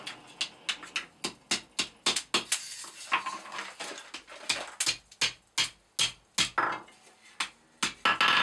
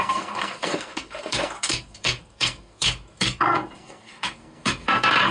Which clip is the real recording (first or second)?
first